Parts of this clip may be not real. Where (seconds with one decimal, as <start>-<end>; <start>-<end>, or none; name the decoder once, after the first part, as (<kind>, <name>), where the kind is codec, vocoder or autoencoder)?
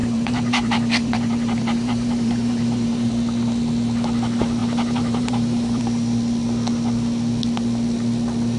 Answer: 0.0-3.1 (vocoder, BigVGAN v2); 4.6-5.8